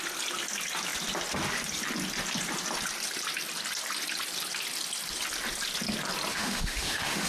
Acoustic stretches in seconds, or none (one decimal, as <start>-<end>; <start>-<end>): 0.0-6.3